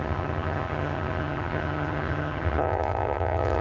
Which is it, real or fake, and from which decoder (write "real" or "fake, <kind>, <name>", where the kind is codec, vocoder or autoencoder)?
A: fake, vocoder, HiFi-GAN